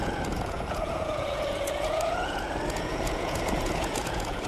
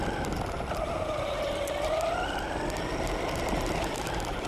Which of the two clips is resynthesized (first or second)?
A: first